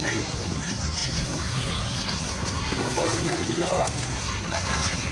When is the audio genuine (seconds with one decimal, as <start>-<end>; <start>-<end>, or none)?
none

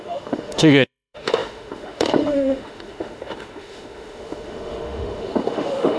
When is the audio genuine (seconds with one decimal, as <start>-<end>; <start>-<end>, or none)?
none

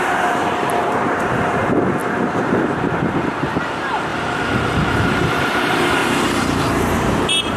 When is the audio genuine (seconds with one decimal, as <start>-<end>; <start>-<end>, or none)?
2.0-3.4; 4.1-5.0; 6.0-6.6

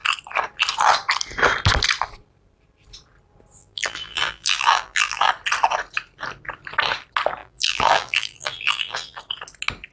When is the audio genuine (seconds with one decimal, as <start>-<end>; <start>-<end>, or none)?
0.0-3.6; 5.3-7.4; 9.2-9.9

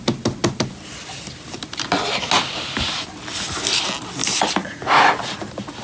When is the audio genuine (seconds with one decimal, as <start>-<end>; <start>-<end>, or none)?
0.0-4.6; 5.1-5.8

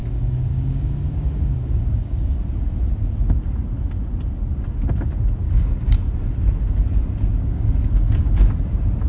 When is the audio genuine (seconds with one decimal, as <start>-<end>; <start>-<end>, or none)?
2.2-5.4; 5.9-7.3; 8.5-9.1

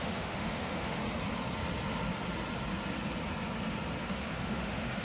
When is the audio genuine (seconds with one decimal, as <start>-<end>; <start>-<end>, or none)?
1.0-4.0